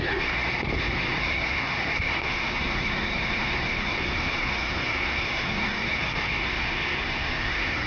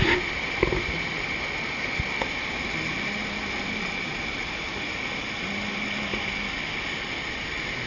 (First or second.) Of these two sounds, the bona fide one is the second